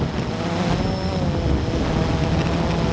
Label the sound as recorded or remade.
recorded